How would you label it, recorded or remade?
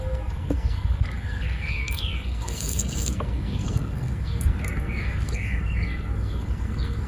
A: remade